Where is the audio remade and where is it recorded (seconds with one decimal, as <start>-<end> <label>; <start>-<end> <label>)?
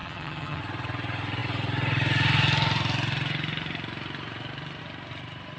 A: 0.0-0.6 remade; 0.6-5.6 recorded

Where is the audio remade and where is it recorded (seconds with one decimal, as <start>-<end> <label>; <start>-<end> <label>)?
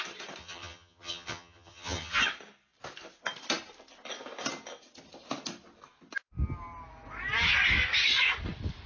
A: 0.0-0.4 recorded; 0.4-2.2 remade; 2.2-8.9 recorded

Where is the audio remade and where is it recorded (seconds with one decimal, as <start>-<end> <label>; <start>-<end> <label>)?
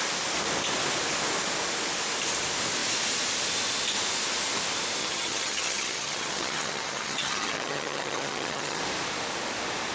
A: 0.0-5.0 recorded; 5.0-8.8 remade; 8.8-9.9 recorded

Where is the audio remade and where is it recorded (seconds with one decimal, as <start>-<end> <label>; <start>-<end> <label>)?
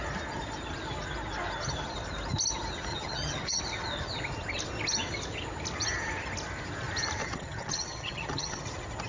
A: 0.0-2.9 recorded; 2.9-3.6 remade; 3.6-7.2 recorded; 7.2-8.6 remade; 8.6-9.1 recorded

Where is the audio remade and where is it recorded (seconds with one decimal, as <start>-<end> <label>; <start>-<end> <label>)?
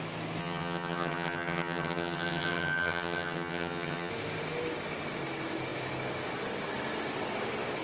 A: 0.0-0.4 recorded; 0.4-4.1 remade; 4.1-7.8 recorded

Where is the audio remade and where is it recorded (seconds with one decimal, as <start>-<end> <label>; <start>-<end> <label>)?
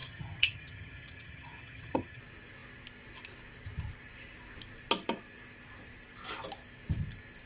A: 0.0-2.2 remade; 2.2-7.5 recorded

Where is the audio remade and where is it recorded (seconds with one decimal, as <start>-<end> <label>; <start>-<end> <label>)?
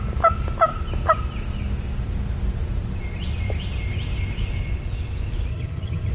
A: 0.0-5.5 recorded; 5.5-6.1 remade